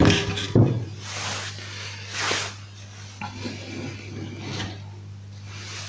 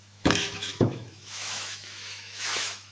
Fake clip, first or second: second